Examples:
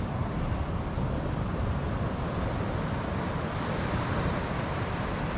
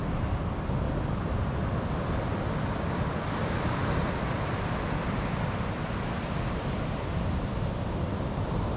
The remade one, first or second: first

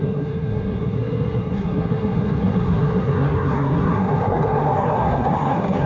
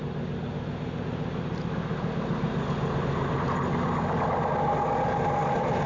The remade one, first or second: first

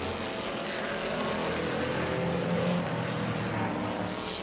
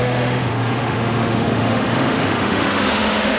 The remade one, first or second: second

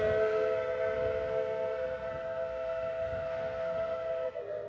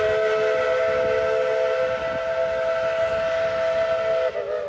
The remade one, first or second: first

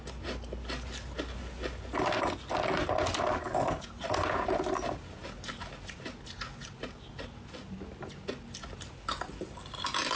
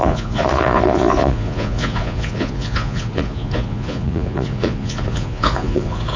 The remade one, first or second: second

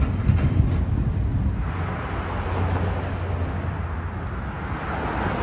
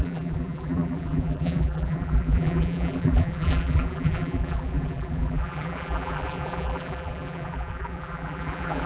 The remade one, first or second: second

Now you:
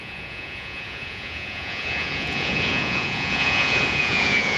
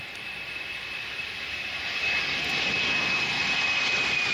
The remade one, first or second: first